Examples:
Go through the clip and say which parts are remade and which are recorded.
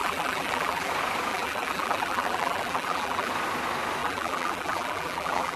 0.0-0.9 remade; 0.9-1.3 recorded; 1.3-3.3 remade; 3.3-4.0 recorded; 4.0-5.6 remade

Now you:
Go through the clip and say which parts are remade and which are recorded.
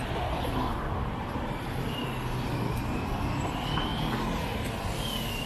0.0-5.5 recorded